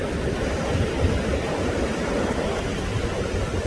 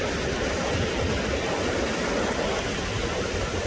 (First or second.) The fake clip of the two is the first